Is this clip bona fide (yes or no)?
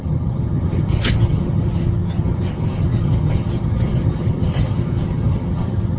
no